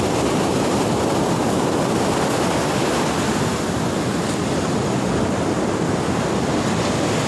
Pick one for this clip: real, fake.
real